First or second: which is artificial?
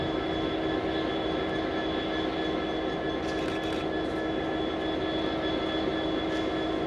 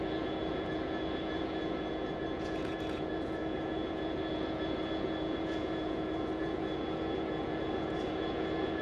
second